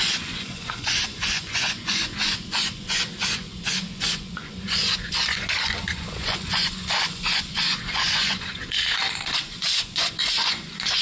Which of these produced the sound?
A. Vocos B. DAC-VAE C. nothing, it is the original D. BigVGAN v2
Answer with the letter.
A